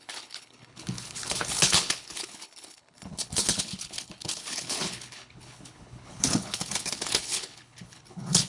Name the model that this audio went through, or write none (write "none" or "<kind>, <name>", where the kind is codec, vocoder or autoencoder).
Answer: codec, HILCodec